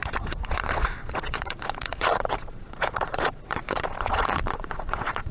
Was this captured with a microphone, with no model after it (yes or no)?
no